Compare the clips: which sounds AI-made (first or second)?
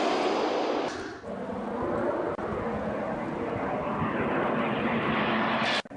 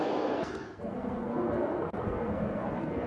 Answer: second